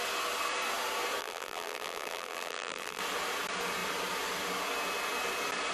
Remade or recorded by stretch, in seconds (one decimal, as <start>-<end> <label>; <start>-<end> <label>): 0.0-1.2 recorded; 1.2-3.0 remade; 3.0-5.7 recorded